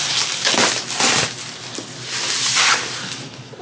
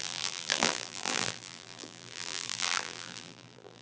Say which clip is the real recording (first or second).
first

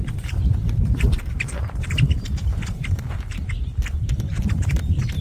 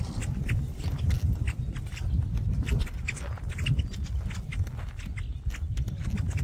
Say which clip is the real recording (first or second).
second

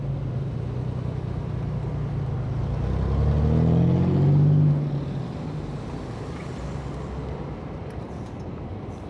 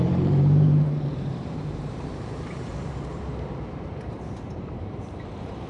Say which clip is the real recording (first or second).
first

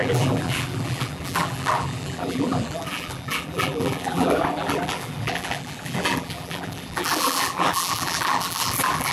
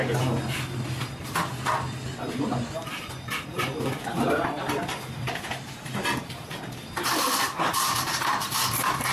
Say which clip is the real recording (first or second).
second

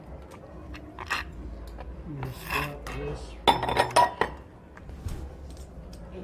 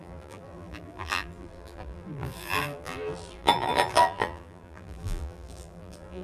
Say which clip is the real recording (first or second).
first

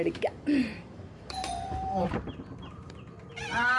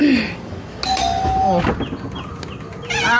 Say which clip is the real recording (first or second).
second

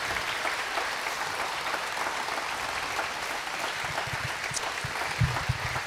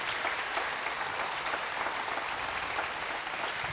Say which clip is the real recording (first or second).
second